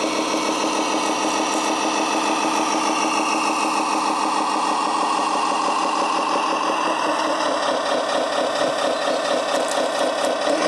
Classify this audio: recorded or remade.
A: recorded